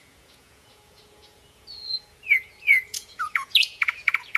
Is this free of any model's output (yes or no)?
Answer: no